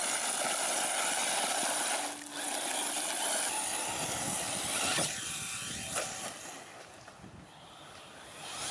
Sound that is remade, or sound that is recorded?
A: recorded